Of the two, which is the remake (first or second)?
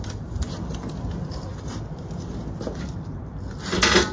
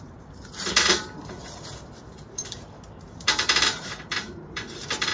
second